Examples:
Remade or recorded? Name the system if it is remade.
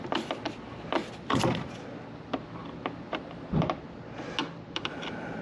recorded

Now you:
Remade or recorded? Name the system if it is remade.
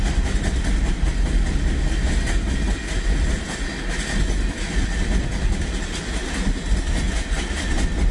recorded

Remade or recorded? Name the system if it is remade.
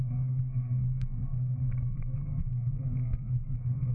remade, codec, SNAC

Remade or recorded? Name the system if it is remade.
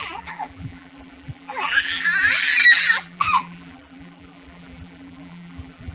remade, vocoder, BigVGAN v2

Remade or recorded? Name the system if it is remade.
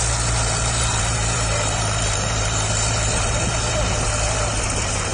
remade, vocoder, BigVGAN v2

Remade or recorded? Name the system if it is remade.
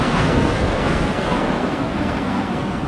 remade, codec, SNAC